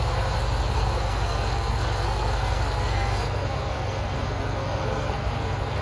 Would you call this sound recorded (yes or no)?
no